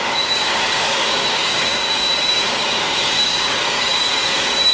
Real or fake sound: fake